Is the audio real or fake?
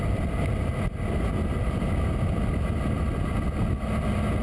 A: real